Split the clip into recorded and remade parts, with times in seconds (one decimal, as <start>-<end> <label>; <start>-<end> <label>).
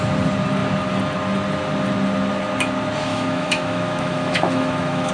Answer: 0.0-3.1 recorded; 3.1-5.1 remade